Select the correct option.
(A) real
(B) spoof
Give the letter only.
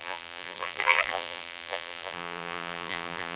B